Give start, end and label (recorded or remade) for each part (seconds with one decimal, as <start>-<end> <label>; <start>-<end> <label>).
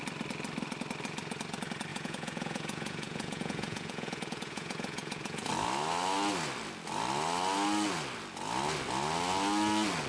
0.0-1.9 recorded; 1.9-5.5 remade; 5.5-10.1 recorded